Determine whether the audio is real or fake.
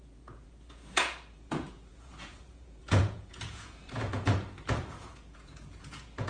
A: fake